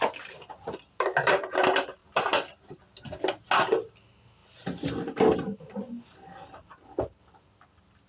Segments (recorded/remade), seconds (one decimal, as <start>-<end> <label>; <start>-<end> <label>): 0.0-8.1 recorded